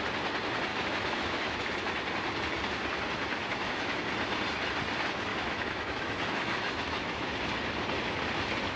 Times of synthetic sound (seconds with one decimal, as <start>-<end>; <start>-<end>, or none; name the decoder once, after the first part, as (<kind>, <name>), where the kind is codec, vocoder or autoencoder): 0.7-1.6 (autoencoder, DAC-VAE); 3.3-4.0; 5.3-7.3